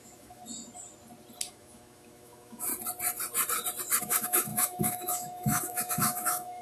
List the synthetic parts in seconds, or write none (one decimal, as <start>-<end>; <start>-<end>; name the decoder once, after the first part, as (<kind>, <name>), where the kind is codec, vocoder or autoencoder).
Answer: 0.0-0.4 (autoencoder, DAC-VAE); 1.5-2.7; 4.0-6.6